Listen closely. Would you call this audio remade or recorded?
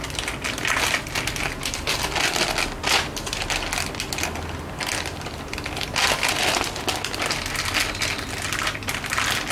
recorded